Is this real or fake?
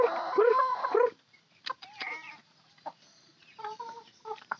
fake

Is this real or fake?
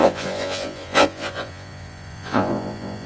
fake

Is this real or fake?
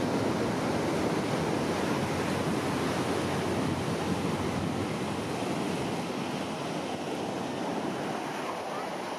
real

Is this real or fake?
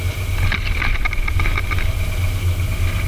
real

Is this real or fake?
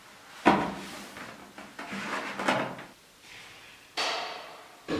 real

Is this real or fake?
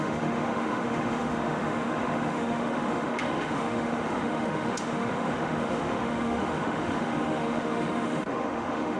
fake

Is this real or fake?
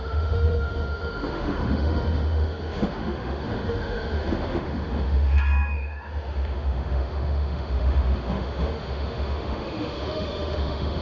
fake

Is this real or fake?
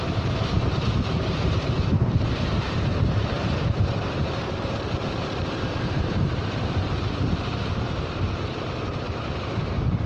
fake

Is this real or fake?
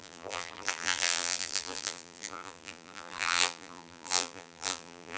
fake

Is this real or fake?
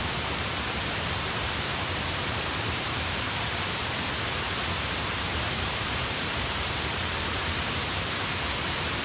fake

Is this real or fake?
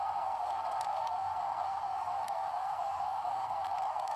fake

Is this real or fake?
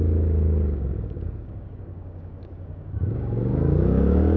fake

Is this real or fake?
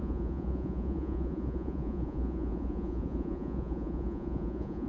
fake